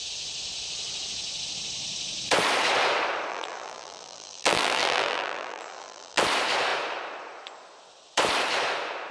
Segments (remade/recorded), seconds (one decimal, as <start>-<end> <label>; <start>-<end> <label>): 0.0-3.3 recorded; 3.3-6.2 remade; 6.2-9.1 recorded